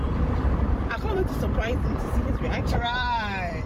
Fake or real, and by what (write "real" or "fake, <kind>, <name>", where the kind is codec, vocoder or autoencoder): fake, vocoder, BigVGAN v2